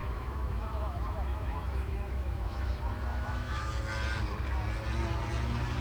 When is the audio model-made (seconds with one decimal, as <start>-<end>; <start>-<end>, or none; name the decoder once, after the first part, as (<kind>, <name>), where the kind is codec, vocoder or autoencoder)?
0.0-2.7 (autoencoder, DAC-VAE); 3.1-3.7